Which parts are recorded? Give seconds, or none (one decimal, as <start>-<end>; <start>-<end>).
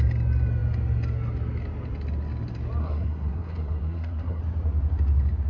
0.0-2.8; 4.4-5.5